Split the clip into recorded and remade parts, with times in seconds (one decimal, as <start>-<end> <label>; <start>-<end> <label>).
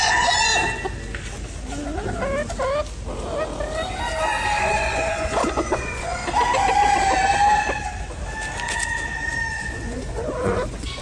0.0-0.5 remade; 0.5-4.6 recorded; 4.6-6.2 remade; 6.2-9.5 recorded; 9.5-11.0 remade